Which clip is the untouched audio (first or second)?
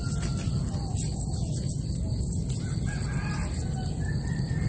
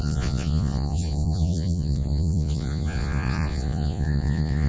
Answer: first